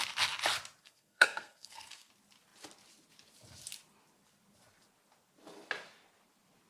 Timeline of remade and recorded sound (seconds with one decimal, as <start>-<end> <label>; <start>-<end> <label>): 0.0-0.8 recorded; 0.8-2.1 remade; 2.1-6.7 recorded